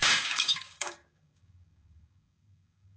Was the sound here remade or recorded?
remade